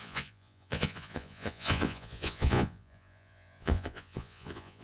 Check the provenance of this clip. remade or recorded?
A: remade